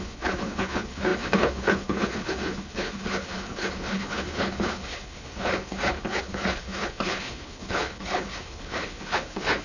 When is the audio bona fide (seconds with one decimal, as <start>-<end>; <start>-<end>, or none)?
none